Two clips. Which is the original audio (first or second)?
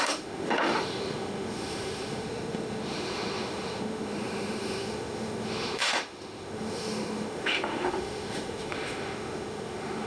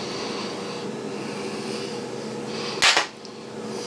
second